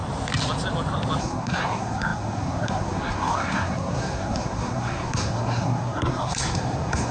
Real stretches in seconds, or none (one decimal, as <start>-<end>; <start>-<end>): 0.0-1.2